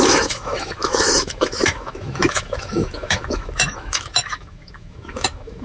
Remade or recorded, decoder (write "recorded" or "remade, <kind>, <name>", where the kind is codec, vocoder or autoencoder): remade, autoencoder, DAC-VAE